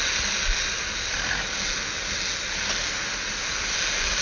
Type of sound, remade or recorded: recorded